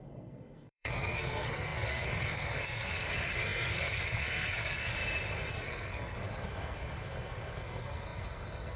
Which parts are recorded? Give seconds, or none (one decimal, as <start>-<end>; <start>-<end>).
5.0-5.5